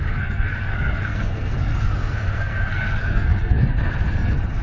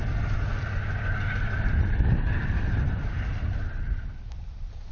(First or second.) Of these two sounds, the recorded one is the second